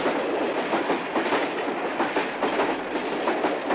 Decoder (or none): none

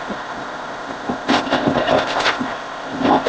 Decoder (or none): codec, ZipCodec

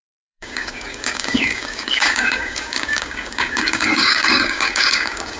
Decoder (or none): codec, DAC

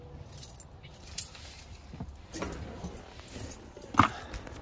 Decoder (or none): none